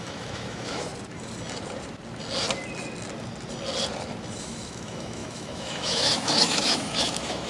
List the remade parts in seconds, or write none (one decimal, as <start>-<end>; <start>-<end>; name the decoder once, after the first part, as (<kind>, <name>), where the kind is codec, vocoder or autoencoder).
0.0-0.9 (autoencoder, DAC-VAE); 4.4-7.5